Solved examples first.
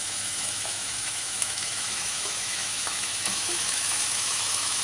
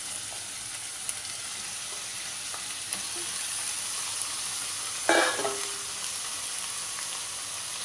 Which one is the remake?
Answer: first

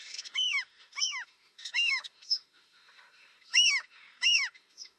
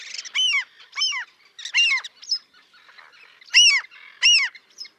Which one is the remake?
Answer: first